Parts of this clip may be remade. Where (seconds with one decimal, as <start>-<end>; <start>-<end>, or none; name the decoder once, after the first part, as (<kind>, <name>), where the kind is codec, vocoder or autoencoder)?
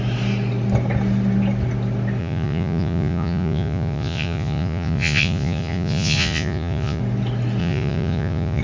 2.2-7.0 (vocoder, Vocos); 7.6-8.6